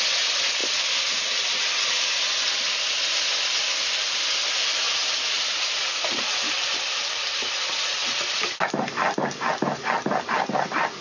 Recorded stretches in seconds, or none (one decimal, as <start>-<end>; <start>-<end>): 0.0-0.6; 2.7-5.0; 5.5-11.0